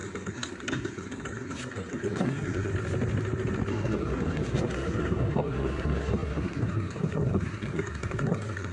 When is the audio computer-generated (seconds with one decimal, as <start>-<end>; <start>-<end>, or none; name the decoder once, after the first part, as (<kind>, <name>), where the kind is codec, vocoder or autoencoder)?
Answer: 0.0-2.7 (codec, SNAC); 3.7-8.7

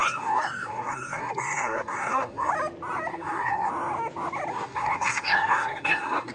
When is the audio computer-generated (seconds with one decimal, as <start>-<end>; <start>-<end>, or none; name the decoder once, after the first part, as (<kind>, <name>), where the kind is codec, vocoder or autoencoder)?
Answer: 0.0-2.5 (codec, SNAC); 3.1-3.7; 4.5-6.3

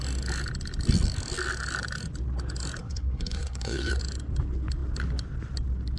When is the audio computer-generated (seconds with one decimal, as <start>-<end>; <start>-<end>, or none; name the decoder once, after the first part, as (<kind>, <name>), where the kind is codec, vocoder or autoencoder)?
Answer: 2.8-4.0 (codec, SNAC)

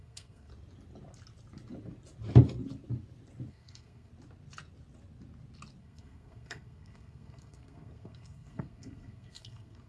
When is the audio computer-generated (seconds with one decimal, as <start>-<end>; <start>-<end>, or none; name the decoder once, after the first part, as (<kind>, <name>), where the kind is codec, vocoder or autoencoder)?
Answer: 0.0-0.5 (codec, SNAC); 3.5-4.1; 5.8-9.9

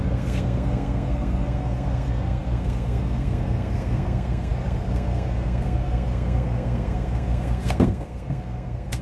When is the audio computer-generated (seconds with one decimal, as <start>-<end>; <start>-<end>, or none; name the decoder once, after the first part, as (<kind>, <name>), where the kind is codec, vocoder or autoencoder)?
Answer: 0.0-9.0 (codec, SNAC)

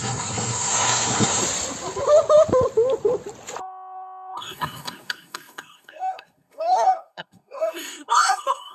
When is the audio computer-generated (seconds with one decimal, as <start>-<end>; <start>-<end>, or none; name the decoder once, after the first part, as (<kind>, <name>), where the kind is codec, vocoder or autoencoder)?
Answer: 0.0-1.4 (codec, SNAC); 3.6-8.7

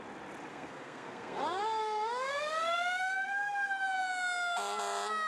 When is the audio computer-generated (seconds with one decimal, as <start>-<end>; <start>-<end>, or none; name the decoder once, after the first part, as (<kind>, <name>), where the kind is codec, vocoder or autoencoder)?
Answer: 0.5-3.7 (codec, SNAC)

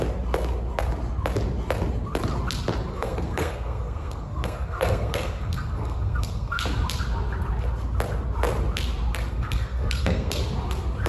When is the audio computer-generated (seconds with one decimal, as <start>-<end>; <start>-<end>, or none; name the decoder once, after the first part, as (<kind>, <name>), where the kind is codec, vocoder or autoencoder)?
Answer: 2.9-6.6 (codec, SNAC); 9.3-10.4